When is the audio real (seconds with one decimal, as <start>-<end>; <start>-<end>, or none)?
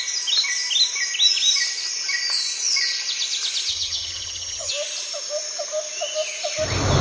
0.0-3.7; 4.7-7.0